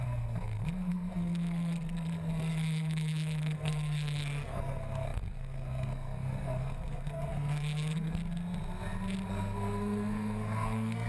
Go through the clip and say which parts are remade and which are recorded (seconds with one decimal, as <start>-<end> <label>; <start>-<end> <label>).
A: 0.0-8.2 remade; 8.2-9.3 recorded; 9.3-11.1 remade